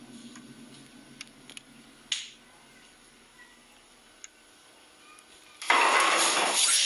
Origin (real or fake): real